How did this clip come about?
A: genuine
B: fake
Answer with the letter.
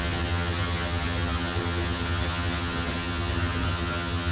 B